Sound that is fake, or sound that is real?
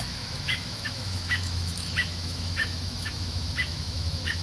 fake